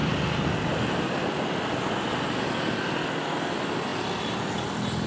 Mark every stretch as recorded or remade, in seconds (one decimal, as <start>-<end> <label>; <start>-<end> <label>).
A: 0.0-5.1 recorded